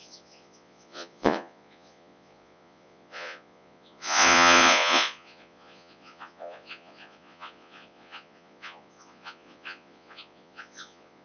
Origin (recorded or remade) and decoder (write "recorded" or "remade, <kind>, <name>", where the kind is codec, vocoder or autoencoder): remade, vocoder, Vocos